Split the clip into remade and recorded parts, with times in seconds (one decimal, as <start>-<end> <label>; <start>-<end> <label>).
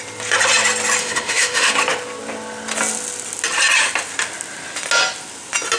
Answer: 0.0-1.0 recorded; 1.0-1.7 remade; 1.7-5.8 recorded